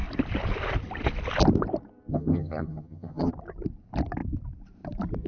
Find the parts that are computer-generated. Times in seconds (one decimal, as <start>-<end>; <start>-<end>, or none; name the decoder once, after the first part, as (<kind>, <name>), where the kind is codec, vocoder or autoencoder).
2.1-3.3 (vocoder, HiFi-GAN)